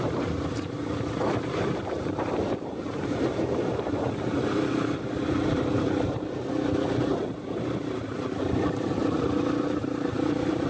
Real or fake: fake